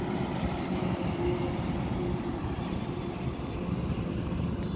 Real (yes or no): yes